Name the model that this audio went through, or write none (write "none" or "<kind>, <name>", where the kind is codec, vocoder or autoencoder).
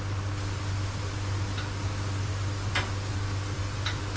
none